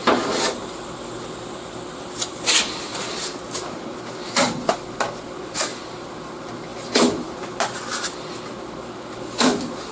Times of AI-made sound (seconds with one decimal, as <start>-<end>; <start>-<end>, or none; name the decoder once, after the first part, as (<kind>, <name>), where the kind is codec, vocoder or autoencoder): 5.7-6.3 (vocoder, BigVGAN v2)